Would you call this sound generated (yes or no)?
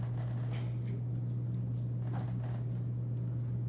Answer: no